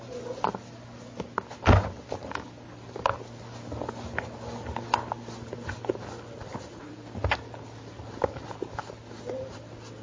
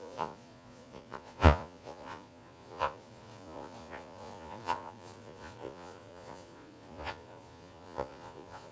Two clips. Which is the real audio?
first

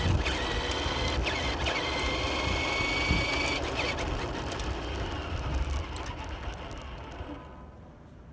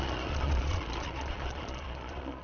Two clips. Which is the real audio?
first